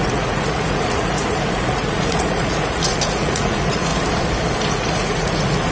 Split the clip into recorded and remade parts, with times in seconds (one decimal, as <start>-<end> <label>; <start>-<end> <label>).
0.0-3.9 remade; 3.9-4.7 recorded; 4.7-5.7 remade